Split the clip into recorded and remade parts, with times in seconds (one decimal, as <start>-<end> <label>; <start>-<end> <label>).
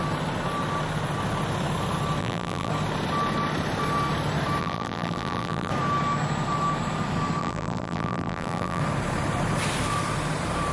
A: 0.0-2.2 recorded; 2.2-2.7 remade; 2.7-4.6 recorded; 4.6-5.7 remade; 5.7-7.4 recorded; 7.4-8.8 remade; 8.8-10.7 recorded